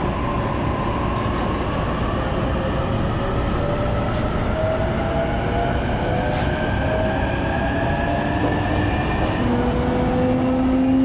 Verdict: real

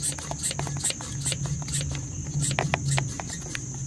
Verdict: real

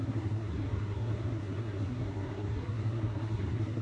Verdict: fake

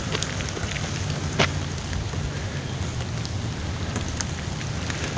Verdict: real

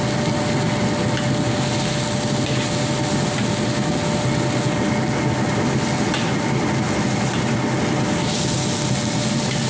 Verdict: real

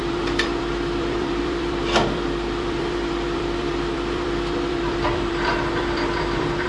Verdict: fake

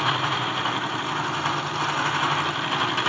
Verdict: real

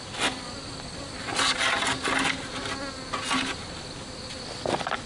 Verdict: real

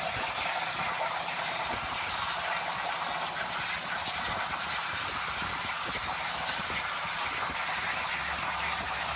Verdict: real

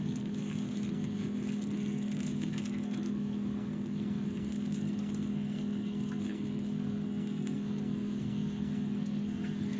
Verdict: fake